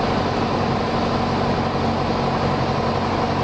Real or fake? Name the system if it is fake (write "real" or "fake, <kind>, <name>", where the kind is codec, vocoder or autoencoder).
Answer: real